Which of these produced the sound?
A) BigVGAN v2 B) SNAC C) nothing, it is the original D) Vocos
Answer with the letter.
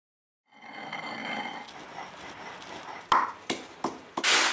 C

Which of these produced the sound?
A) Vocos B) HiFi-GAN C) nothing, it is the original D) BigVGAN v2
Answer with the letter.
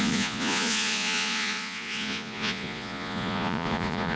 A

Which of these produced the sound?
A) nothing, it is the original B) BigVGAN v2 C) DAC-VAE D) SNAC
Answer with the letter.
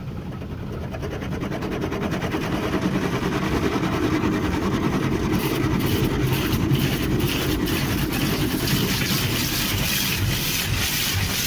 A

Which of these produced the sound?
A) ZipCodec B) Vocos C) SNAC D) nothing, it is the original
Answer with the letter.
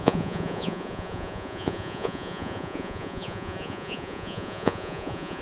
B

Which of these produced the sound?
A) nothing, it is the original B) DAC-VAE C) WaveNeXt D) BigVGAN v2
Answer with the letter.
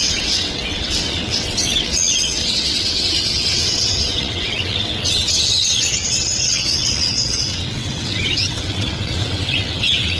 C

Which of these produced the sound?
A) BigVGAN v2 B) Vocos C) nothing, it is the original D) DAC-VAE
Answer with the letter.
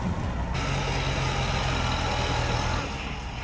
C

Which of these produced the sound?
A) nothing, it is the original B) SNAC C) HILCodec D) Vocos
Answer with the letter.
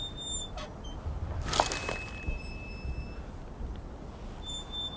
A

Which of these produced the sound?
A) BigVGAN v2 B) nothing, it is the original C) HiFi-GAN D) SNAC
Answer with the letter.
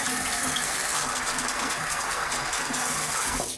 D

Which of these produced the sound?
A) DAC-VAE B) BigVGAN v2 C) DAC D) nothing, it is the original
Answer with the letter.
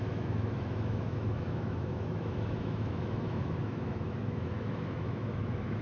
A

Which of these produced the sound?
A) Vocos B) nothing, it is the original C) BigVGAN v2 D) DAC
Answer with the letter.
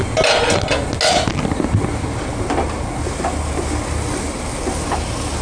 B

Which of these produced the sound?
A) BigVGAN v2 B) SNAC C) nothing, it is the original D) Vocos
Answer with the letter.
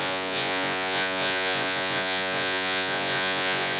D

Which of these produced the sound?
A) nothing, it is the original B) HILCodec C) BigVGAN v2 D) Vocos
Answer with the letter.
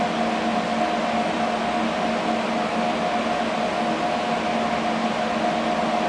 A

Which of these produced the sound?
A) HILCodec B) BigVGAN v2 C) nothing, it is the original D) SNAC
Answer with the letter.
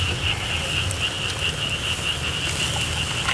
C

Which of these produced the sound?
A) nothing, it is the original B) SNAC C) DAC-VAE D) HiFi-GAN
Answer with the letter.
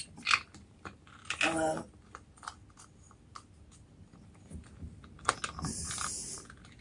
A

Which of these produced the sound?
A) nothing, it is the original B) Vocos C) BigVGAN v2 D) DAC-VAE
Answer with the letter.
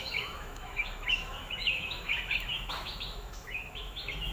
D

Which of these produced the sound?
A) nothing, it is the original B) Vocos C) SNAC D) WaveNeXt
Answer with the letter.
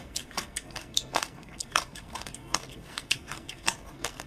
C